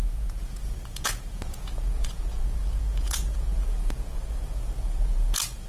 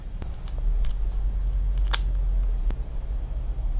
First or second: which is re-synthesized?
first